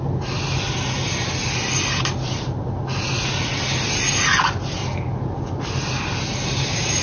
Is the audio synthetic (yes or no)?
no